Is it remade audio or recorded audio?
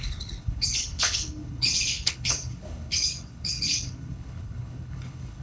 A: remade